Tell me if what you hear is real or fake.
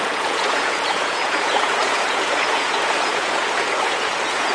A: fake